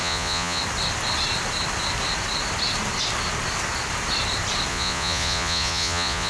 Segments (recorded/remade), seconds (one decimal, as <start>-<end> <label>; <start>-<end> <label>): 0.0-0.6 remade; 0.6-4.7 recorded; 4.7-6.3 remade